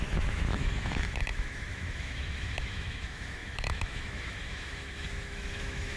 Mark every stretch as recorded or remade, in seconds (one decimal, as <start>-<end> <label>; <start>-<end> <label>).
0.0-6.0 remade